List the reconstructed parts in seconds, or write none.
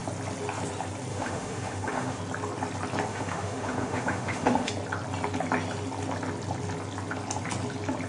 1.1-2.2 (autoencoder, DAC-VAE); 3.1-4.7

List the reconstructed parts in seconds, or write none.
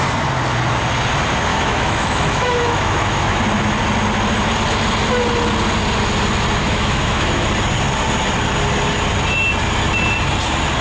1.5-3.4 (autoencoder, DAC-VAE); 6.6-7.5